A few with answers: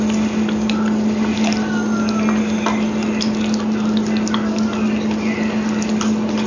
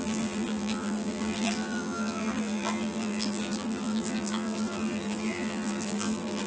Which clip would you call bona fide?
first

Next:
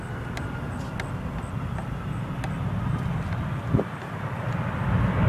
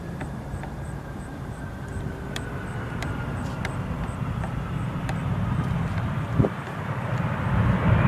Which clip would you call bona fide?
first